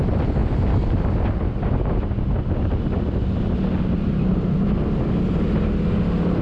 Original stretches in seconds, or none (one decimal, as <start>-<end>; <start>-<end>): 0.0-6.4